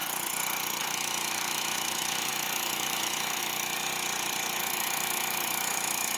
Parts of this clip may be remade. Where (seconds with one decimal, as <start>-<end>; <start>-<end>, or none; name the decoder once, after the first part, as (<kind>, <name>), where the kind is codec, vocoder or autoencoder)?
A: 0.8-3.9 (autoencoder, DAC-VAE); 4.6-6.2